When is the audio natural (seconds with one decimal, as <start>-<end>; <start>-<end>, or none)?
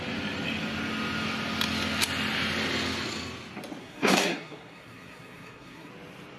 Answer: 0.0-3.8; 5.9-6.4